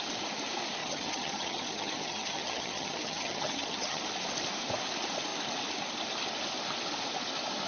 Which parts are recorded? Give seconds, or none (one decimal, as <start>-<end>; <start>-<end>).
0.0-0.8; 4.0-7.7